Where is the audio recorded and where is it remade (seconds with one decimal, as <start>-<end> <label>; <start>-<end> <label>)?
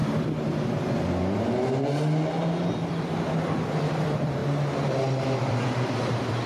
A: 0.0-3.9 recorded; 3.9-4.4 remade; 4.4-5.4 recorded; 5.4-6.5 remade